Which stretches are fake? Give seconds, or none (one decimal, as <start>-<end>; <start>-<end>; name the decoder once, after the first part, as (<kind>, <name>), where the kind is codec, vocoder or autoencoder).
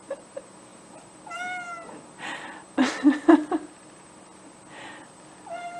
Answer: none